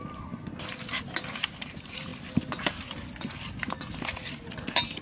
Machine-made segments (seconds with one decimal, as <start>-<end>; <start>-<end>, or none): none